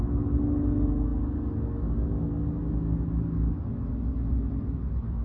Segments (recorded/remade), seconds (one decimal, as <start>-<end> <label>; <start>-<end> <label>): 0.0-4.3 recorded; 4.3-5.2 remade